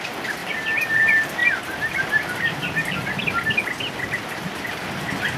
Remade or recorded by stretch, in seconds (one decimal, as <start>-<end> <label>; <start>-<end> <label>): 0.0-5.4 recorded